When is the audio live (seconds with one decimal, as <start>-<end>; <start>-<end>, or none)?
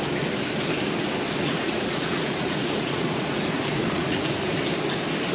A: 0.0-1.4; 4.6-5.3